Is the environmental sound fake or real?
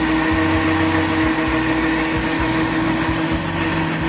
real